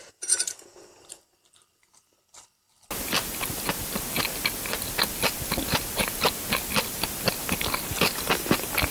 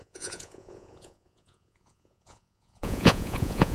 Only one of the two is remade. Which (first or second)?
second